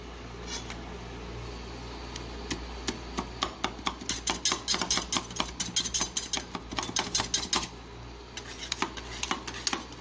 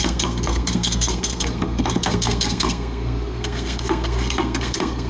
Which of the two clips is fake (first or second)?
second